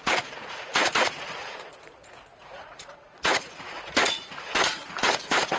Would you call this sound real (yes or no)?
no